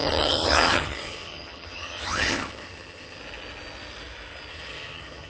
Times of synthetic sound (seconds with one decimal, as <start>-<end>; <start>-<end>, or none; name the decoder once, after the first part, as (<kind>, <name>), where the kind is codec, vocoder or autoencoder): 0.0-3.2 (vocoder, HiFi-GAN); 4.5-5.3